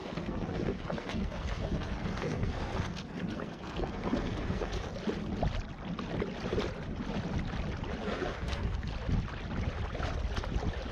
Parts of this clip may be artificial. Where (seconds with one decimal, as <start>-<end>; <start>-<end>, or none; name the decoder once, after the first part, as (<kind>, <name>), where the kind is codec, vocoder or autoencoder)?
0.0-4.9 (codec, SNAC); 8.0-8.9